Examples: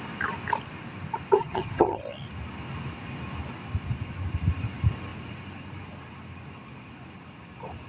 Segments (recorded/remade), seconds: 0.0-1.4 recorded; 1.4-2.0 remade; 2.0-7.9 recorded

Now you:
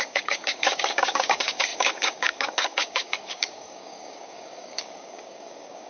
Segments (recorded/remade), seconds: 0.0-5.9 remade

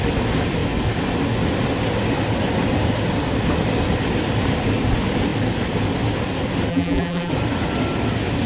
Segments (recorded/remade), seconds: 0.0-6.7 recorded; 6.7-7.3 remade; 7.3-8.5 recorded

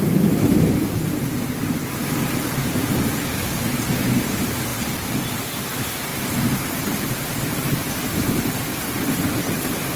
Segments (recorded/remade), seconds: 0.0-4.7 remade; 4.7-5.2 recorded; 5.2-10.0 remade

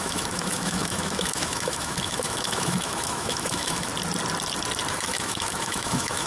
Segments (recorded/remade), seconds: 0.0-3.9 remade; 3.9-4.9 recorded; 4.9-6.3 remade

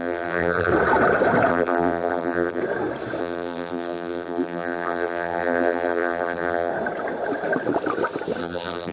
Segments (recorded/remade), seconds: 0.0-0.7 remade; 0.7-1.5 recorded; 1.5-2.6 remade; 2.6-3.2 recorded; 3.2-6.7 remade; 6.7-8.4 recorded; 8.4-8.9 remade